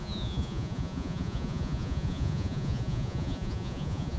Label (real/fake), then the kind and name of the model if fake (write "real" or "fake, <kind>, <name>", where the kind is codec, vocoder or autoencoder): fake, vocoder, Vocos